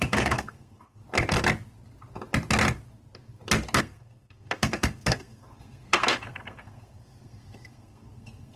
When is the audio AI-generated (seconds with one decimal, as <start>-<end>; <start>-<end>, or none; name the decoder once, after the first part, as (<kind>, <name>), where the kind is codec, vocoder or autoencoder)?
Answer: 0.0-1.0 (codec, SNAC); 3.8-8.6

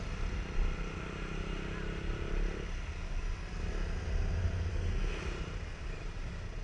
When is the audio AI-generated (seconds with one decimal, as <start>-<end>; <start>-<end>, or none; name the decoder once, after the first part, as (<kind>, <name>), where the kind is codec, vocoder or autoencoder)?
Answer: 4.7-5.2 (codec, SNAC)

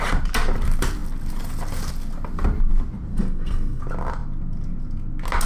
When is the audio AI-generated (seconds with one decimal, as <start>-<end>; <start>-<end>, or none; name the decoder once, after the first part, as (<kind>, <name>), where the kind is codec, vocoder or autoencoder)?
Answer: 3.1-3.8 (codec, SNAC)

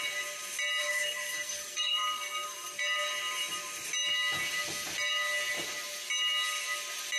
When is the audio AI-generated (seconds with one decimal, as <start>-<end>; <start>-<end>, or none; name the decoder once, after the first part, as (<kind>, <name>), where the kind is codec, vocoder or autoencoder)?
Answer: 0.8-2.8 (codec, SNAC)

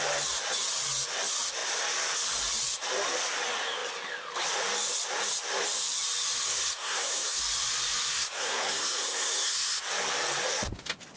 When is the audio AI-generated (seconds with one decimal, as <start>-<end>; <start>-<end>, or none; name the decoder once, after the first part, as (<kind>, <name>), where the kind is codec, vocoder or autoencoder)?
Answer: 6.5-7.4 (codec, SNAC); 8.1-9.8